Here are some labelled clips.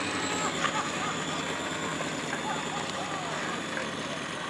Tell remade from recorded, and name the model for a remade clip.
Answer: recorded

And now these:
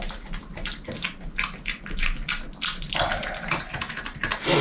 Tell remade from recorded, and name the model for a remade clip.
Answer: recorded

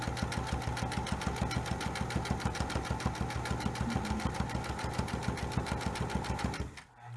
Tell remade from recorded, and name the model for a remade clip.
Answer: recorded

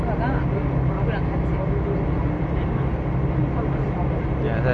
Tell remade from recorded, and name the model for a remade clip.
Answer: recorded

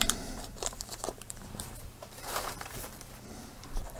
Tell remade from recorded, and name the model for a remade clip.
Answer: remade, vocoder, BigVGAN v2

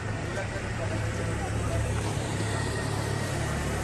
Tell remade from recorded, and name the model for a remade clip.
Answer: remade, vocoder, BigVGAN v2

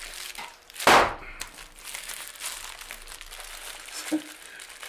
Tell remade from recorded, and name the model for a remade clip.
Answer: recorded